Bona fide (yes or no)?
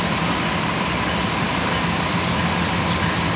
yes